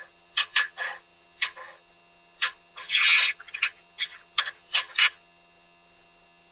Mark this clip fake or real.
fake